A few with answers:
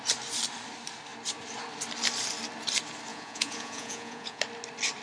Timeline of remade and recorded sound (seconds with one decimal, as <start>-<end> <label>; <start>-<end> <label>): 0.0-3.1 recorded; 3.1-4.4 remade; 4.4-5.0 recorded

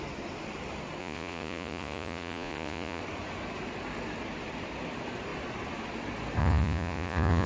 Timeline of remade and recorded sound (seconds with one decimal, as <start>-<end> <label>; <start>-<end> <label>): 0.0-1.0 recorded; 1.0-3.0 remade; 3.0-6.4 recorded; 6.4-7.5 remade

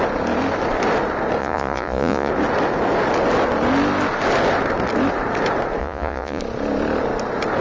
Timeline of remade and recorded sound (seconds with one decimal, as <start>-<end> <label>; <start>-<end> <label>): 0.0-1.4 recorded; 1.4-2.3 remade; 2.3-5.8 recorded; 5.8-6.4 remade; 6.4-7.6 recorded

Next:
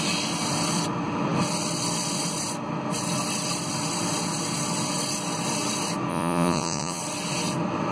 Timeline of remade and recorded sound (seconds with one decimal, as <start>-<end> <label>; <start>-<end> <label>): 0.0-6.1 recorded; 6.1-7.0 remade; 7.0-7.9 recorded

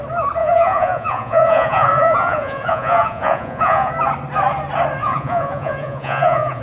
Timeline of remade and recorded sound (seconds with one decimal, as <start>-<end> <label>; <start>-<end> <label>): 0.0-0.4 recorded; 0.4-3.9 remade; 3.9-5.0 recorded; 5.0-6.6 remade

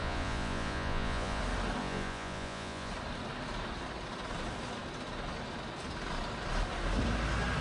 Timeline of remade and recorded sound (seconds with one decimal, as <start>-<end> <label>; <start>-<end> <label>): 0.0-1.4 remade; 1.4-1.8 recorded; 1.8-2.9 remade; 2.9-7.6 recorded

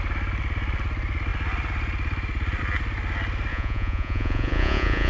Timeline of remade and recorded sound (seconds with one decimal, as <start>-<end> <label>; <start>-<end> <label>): 0.0-3.5 recorded; 3.5-5.1 remade